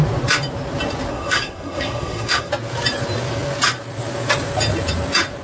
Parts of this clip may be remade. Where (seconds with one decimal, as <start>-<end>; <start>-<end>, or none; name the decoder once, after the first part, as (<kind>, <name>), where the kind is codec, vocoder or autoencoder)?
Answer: 1.1-2.5 (codec, SNAC)